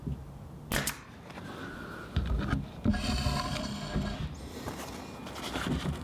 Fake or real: real